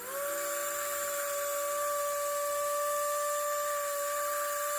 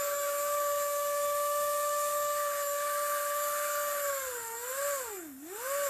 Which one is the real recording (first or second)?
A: first